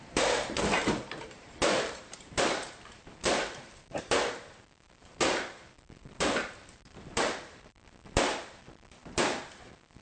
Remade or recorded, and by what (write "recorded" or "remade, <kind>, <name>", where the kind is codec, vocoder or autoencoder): remade, vocoder, BigVGAN v2